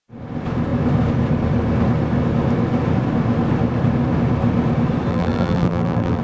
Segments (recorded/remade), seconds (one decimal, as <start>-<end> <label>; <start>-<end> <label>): 0.0-5.1 recorded; 5.1-6.2 remade